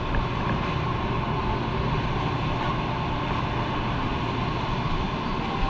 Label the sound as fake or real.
real